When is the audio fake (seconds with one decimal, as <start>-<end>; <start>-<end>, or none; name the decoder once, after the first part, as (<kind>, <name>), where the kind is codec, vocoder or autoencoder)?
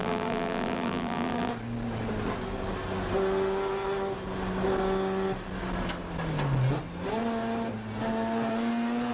0.0-1.5 (vocoder, BigVGAN v2)